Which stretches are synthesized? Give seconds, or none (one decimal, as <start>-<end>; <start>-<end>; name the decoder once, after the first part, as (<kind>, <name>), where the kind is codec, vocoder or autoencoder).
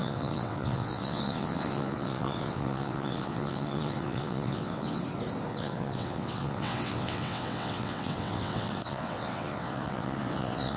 0.0-5.0 (vocoder, WaveNeXt); 5.5-10.8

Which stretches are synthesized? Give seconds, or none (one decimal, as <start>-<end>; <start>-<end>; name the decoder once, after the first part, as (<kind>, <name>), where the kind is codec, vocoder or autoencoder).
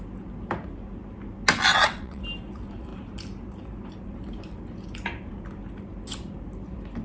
1.7-2.2 (vocoder, WaveNeXt)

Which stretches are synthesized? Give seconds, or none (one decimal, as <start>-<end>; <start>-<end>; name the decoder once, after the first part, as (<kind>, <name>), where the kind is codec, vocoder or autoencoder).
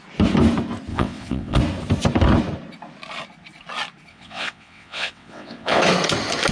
0.9-1.6 (vocoder, WaveNeXt); 4.1-5.8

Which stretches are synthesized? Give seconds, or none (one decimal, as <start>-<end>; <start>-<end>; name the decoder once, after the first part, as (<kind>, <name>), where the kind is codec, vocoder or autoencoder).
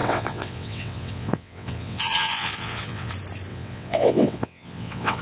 0.0-3.1 (vocoder, WaveNeXt); 3.5-5.2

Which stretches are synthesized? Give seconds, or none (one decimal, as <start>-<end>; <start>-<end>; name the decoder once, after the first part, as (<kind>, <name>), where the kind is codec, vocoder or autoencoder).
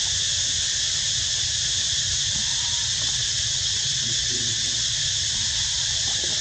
2.5-4.9 (vocoder, WaveNeXt)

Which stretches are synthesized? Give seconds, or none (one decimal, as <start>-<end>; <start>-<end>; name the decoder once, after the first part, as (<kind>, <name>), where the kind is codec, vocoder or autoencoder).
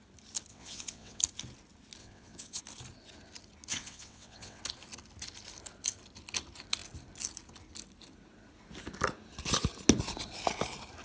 0.5-1.2 (vocoder, WaveNeXt); 2.0-2.6; 3.7-4.6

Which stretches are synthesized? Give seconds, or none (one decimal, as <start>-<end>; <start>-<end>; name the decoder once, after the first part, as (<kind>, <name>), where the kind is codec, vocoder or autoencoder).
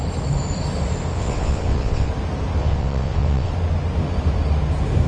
1.1-2.1 (vocoder, WaveNeXt); 2.6-3.5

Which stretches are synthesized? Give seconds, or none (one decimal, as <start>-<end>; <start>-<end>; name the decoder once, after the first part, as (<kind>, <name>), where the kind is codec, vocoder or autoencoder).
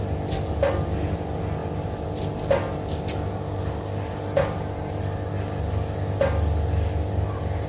none